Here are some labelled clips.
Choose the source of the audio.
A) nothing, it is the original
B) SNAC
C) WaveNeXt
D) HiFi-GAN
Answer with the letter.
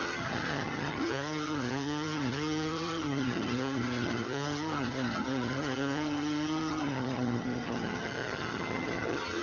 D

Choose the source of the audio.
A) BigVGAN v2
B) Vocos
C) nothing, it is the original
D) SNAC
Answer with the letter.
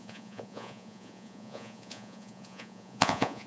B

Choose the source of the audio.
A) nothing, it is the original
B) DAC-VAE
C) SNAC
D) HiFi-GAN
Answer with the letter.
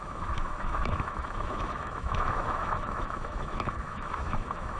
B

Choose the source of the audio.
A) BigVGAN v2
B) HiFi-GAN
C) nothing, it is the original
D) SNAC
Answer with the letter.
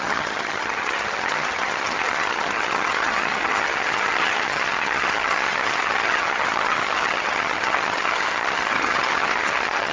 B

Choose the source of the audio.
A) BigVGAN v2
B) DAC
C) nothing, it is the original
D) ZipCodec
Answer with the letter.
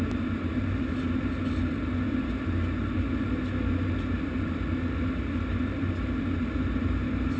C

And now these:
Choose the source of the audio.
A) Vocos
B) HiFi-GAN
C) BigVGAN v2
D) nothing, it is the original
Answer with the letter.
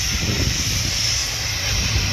D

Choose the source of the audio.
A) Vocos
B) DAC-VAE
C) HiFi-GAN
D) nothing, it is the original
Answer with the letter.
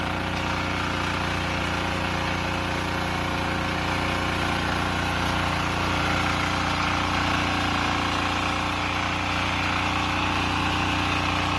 D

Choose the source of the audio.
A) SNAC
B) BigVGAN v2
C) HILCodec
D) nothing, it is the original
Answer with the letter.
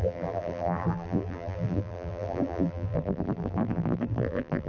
B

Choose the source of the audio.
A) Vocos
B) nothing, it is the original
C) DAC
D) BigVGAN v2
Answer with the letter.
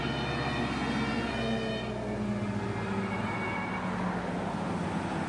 B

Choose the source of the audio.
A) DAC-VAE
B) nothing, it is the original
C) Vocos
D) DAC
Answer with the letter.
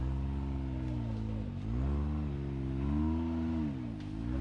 B